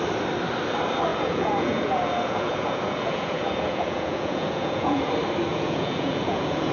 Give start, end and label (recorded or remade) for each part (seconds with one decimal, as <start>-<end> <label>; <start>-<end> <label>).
0.0-1.1 recorded; 1.1-5.1 remade; 5.1-5.5 recorded; 5.5-6.7 remade

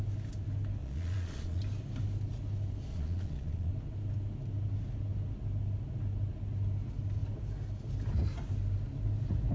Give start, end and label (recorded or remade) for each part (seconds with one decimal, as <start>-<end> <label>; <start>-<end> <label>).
0.0-0.8 recorded; 0.8-1.6 remade; 1.6-2.9 recorded; 2.9-3.7 remade; 3.7-9.5 recorded

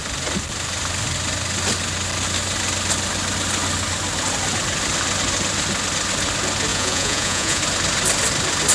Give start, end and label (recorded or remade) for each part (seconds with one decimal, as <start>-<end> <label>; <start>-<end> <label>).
0.0-6.7 recorded; 6.7-7.6 remade; 7.6-8.7 recorded

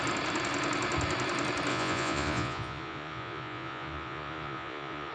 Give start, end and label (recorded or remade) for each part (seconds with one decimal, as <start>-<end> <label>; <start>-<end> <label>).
0.0-1.7 recorded; 1.7-5.1 remade

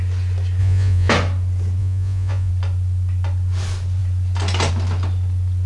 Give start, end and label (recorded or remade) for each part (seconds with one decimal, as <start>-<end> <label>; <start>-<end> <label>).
0.0-0.6 recorded; 0.6-1.1 remade; 1.1-1.8 recorded; 1.8-2.5 remade; 2.5-5.7 recorded

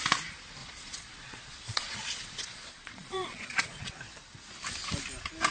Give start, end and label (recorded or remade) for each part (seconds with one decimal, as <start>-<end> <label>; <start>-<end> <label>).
0.0-0.6 recorded; 0.6-3.9 remade; 3.9-5.5 recorded